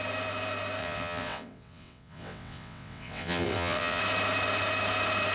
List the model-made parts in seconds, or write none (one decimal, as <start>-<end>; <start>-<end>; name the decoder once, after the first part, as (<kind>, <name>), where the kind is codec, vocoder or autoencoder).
0.8-4.0 (vocoder, WaveNeXt)